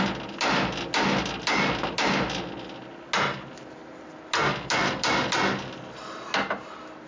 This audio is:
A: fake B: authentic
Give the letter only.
B